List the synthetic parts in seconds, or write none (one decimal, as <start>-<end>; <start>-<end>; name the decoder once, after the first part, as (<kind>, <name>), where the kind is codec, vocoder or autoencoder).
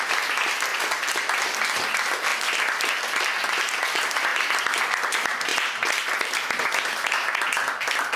4.3-4.8 (vocoder, BigVGAN v2); 5.5-6.9